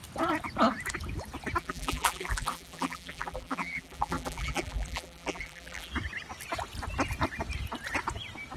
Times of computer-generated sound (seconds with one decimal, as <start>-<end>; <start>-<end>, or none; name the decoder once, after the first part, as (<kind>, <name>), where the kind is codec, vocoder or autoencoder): 1.6-5.9 (vocoder, BigVGAN v2)